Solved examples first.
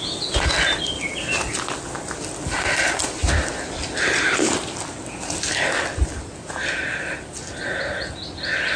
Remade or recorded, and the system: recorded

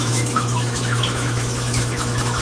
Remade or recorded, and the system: remade, autoencoder, DAC-VAE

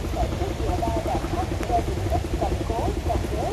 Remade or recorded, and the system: recorded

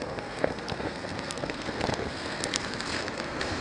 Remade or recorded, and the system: remade, codec, SNAC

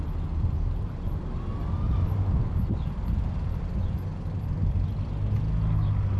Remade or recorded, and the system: recorded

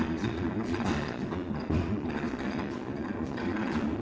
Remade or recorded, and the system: remade, vocoder, Vocos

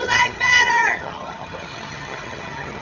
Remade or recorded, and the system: remade, vocoder, HiFi-GAN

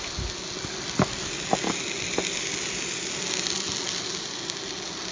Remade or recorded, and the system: recorded